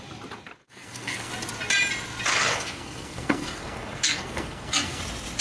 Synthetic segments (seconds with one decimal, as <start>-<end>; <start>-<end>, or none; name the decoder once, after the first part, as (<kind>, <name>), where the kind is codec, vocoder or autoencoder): 0.6-1.3 (codec, SNAC); 2.3-5.0